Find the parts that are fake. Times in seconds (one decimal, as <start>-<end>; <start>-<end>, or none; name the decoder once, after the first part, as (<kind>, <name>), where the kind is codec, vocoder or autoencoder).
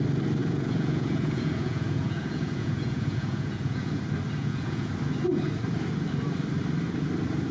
0.4-4.0 (vocoder, Vocos); 4.4-4.9